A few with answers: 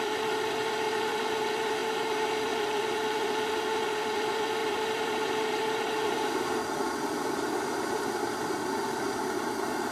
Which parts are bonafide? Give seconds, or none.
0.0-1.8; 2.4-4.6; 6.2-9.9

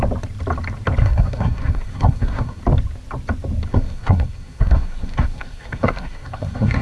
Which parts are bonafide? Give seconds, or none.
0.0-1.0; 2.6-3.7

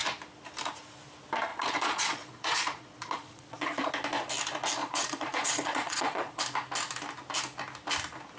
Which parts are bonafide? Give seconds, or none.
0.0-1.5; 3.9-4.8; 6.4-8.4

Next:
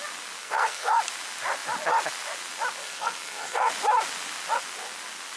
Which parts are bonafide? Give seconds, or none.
0.0-0.4; 1.0-2.8; 3.7-5.4